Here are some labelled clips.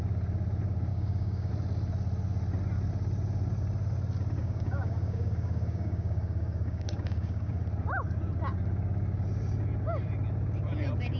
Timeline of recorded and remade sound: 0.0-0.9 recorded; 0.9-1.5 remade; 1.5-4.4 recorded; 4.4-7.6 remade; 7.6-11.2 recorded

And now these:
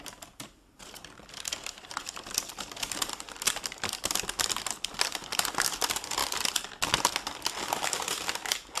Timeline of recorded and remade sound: 0.0-6.2 recorded; 6.2-7.1 remade; 7.1-8.8 recorded

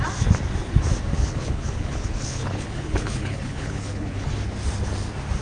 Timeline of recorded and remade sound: 0.0-1.1 recorded; 1.1-4.3 remade; 4.3-5.4 recorded